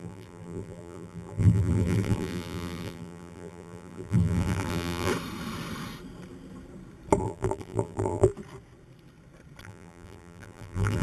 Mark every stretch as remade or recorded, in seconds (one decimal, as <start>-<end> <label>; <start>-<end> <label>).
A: 0.0-5.1 remade; 5.1-7.2 recorded; 7.2-8.3 remade; 8.3-9.6 recorded; 9.6-11.0 remade

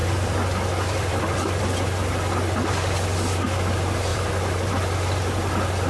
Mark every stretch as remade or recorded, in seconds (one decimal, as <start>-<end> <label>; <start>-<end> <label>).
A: 0.0-1.6 remade; 1.6-4.1 recorded; 4.1-4.7 remade; 4.7-5.9 recorded

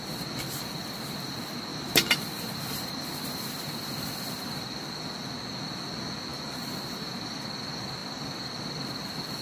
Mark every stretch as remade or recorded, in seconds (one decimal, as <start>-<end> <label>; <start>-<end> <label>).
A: 0.0-1.7 recorded; 1.7-3.3 remade; 3.3-6.3 recorded; 6.3-7.5 remade; 7.5-9.4 recorded

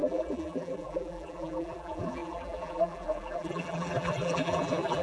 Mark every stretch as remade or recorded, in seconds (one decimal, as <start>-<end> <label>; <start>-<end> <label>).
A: 0.0-5.0 remade

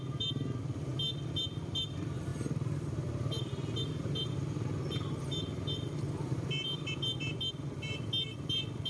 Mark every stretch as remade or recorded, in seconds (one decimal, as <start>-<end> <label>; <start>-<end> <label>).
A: 0.0-0.9 remade; 0.9-1.4 recorded; 1.4-2.3 remade; 2.3-7.5 recorded; 7.5-8.9 remade

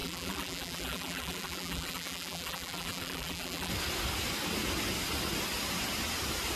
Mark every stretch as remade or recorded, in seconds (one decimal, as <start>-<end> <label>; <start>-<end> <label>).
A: 0.0-3.7 remade; 3.7-6.6 recorded